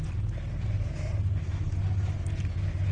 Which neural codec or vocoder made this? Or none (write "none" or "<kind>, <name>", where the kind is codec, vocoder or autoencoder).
none